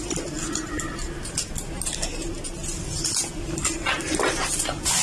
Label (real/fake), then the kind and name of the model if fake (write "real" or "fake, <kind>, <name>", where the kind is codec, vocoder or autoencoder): real